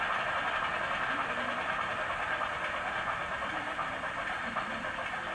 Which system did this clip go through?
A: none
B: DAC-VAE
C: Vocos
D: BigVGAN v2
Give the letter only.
D